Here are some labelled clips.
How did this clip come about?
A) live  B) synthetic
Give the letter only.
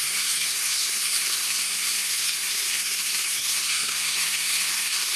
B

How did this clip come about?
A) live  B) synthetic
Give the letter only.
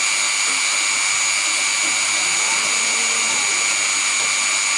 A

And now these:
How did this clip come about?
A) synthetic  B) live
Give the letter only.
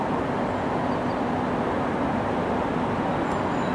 B